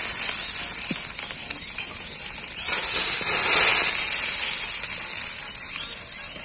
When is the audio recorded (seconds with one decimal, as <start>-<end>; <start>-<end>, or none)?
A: 0.0-6.4